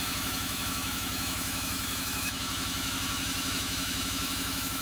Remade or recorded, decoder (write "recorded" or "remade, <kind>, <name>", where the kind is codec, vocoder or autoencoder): remade, autoencoder, DAC-VAE